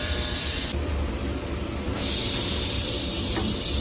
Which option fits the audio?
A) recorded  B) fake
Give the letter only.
B